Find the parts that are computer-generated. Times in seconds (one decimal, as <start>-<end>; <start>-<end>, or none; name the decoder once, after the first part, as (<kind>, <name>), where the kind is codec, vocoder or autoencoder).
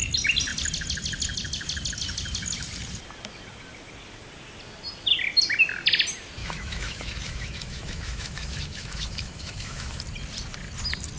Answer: 6.4-10.0 (autoencoder, DAC-VAE)